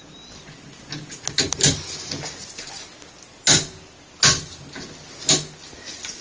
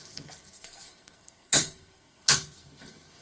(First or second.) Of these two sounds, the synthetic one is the second